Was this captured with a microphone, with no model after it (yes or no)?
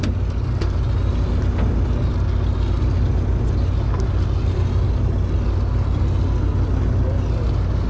yes